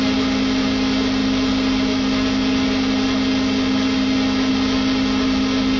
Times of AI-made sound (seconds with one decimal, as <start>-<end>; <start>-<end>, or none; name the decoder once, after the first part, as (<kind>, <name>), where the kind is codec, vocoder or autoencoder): none